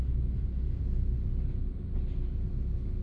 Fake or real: real